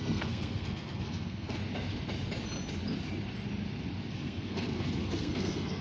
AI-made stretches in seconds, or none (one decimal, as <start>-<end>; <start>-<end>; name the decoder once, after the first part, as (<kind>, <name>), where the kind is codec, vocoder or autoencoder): 0.0-1.6 (codec, SNAC); 4.1-5.8